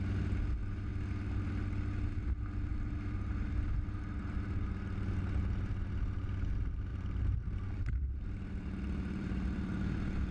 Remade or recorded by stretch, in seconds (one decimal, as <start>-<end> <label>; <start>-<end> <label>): 0.0-2.7 recorded; 2.7-4.0 remade; 4.0-6.9 recorded; 6.9-9.8 remade; 9.8-10.3 recorded